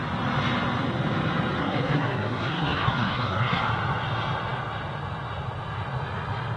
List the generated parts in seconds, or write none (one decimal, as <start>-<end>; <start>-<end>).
1.6-3.7

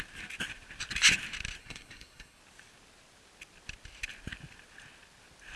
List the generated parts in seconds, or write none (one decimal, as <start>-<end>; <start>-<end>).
1.6-2.4